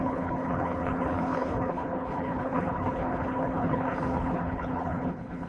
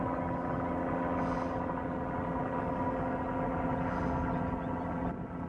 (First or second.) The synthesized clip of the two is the first